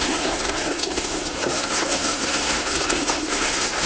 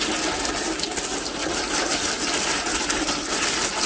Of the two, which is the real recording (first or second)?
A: second